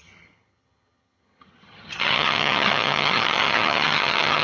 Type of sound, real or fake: fake